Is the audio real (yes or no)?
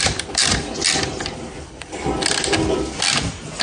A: no